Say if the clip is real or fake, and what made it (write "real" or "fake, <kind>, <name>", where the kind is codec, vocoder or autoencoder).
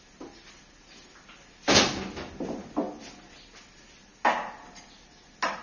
real